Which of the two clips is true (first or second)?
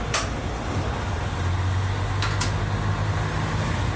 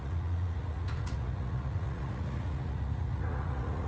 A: first